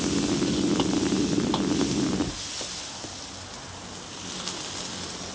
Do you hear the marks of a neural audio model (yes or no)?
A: no